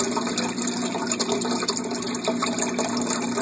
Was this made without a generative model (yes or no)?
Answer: yes